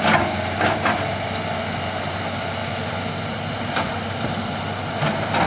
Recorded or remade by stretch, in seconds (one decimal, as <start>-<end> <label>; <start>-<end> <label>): 0.0-5.5 recorded